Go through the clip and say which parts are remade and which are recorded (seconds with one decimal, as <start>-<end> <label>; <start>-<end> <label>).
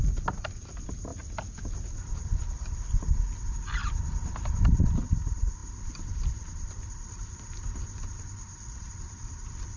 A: 0.0-3.8 recorded; 3.8-4.5 remade; 4.5-9.8 recorded